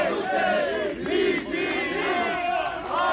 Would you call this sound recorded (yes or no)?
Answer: yes